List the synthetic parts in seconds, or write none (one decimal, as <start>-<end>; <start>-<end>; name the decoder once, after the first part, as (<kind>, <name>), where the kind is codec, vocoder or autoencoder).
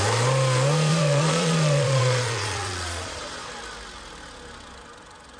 0.9-3.5 (vocoder, Vocos)